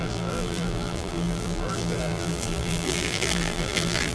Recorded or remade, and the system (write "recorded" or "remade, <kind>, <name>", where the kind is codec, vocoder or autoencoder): remade, vocoder, BigVGAN v2